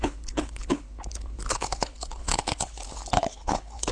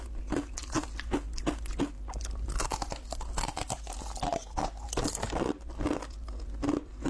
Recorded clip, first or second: second